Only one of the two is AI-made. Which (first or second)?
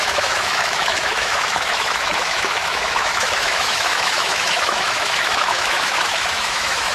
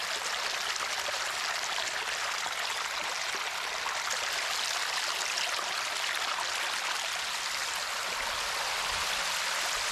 first